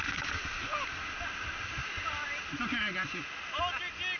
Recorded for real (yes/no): yes